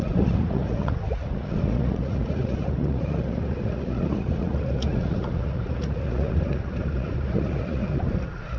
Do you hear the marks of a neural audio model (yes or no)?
yes